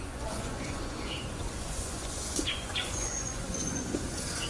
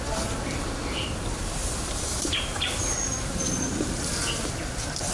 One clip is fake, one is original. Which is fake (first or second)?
first